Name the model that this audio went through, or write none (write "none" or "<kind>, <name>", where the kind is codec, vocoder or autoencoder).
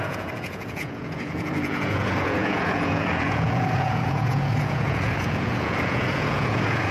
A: vocoder, Vocos